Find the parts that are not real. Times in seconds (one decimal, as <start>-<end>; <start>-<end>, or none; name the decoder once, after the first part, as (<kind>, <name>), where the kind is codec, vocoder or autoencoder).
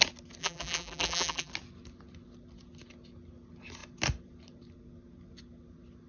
0.4-1.5 (vocoder, BigVGAN v2)